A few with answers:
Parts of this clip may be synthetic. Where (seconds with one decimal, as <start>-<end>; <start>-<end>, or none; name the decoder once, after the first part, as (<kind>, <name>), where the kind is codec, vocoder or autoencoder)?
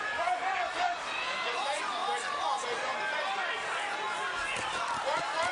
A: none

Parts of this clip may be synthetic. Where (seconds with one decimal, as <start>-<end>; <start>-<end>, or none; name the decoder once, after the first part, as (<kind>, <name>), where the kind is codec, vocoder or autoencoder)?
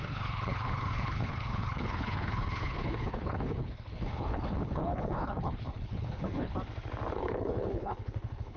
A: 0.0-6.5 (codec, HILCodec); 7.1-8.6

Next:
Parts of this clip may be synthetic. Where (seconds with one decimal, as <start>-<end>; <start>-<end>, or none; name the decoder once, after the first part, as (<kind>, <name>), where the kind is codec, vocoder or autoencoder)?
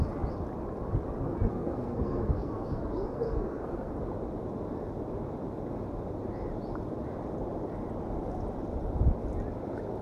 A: 1.5-3.9 (codec, SNAC)